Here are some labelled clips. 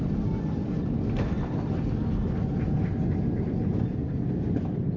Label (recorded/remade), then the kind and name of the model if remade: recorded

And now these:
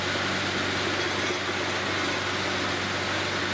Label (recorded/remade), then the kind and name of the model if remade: recorded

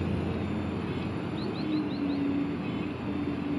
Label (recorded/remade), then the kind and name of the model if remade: recorded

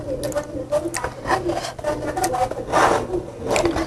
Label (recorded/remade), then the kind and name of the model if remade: recorded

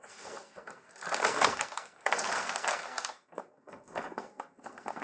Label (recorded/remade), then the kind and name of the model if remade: remade, codec, SNAC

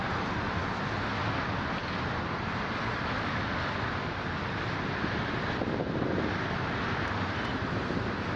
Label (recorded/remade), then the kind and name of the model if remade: recorded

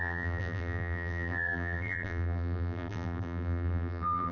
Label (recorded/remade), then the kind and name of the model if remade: remade, vocoder, BigVGAN v2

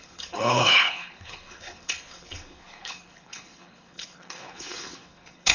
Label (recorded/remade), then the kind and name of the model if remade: remade, codec, HILCodec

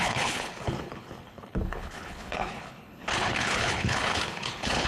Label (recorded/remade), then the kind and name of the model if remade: remade, codec, HILCodec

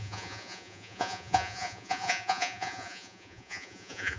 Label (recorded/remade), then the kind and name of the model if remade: remade, vocoder, Vocos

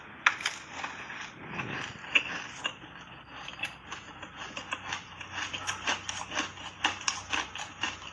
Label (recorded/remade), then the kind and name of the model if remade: recorded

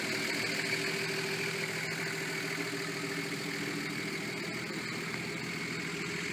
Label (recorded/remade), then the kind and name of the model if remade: recorded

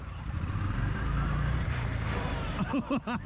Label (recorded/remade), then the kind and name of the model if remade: remade, vocoder, BigVGAN v2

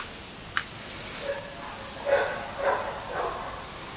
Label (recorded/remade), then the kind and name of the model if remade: recorded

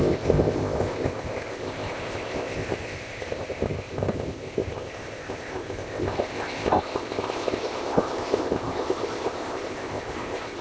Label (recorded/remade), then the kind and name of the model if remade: remade, codec, ZipCodec